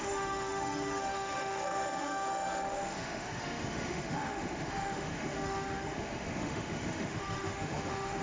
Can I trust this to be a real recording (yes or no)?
no